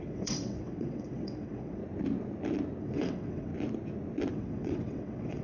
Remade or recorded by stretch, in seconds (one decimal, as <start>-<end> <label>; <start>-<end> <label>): 0.0-1.8 remade; 1.8-2.8 recorded; 2.8-3.5 remade; 3.5-4.3 recorded; 4.3-5.4 remade